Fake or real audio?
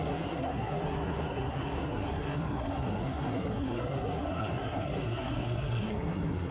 fake